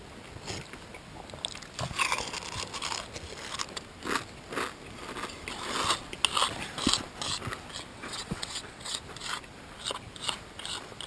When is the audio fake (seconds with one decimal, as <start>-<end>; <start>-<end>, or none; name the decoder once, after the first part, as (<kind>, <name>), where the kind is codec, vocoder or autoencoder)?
7.9-9.0 (vocoder, WaveNeXt)